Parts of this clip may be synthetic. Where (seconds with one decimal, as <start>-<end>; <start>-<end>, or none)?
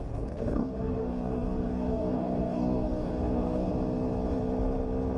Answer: 0.0-3.7